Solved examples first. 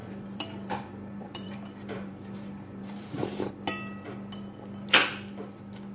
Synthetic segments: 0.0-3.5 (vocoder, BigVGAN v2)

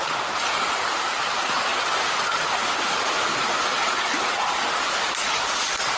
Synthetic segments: none

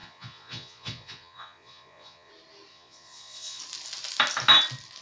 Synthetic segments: 0.0-2.3 (vocoder, Vocos); 2.7-3.6

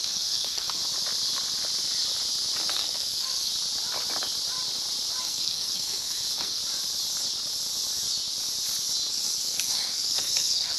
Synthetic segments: 0.0-0.8 (codec, SNAC); 2.7-3.5; 5.2-6.6; 9.1-10.8

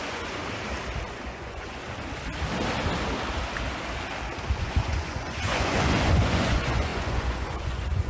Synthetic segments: 0.0-0.4 (vocoder, Vocos); 1.1-1.8; 4.6-8.1

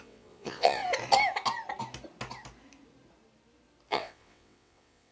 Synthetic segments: 0.0-0.8 (vocoder, WaveNeXt); 3.9-5.1

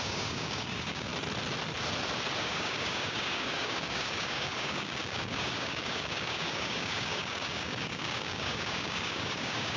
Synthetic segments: 0.0-1.1 (codec, DAC); 2.4-9.8